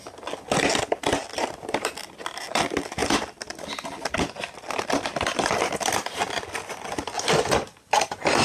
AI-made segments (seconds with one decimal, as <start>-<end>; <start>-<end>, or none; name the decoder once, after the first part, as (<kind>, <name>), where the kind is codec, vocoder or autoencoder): 1.2-2.0 (vocoder, BigVGAN v2)